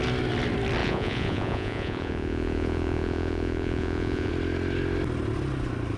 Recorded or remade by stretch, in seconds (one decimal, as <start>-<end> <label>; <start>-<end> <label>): 0.0-0.8 recorded; 0.8-4.3 remade; 4.3-6.0 recorded